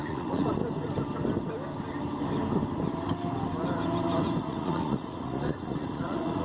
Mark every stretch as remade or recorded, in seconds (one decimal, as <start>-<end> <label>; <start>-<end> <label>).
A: 0.0-0.6 remade; 0.6-4.4 recorded; 4.4-6.4 remade